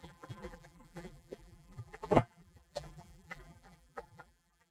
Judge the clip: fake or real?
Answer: fake